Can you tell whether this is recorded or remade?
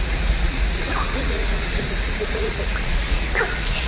remade